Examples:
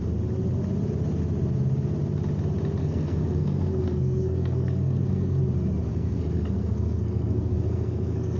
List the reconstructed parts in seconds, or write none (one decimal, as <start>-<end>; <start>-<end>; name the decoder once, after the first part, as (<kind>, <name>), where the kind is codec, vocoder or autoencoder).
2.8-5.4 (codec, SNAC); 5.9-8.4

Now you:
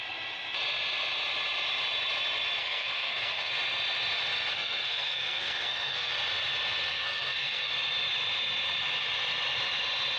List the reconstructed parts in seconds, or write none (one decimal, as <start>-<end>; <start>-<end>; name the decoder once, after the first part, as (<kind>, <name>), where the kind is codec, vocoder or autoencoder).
2.6-3.5 (codec, SNAC); 4.5-6.1; 6.9-7.7

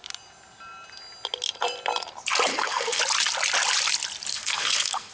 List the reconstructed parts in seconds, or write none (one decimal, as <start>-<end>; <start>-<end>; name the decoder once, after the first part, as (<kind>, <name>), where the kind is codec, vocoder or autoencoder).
2.5-3.0 (codec, SNAC); 4.3-5.1

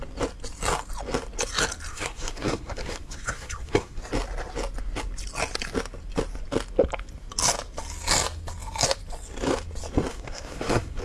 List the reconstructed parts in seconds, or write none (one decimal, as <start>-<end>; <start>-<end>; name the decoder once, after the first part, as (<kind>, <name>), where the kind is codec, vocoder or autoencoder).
1.9-4.0 (codec, SNAC); 10.1-11.0